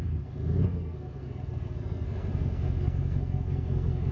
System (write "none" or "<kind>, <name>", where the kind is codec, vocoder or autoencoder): codec, SNAC